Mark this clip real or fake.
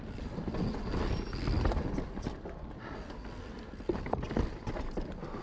real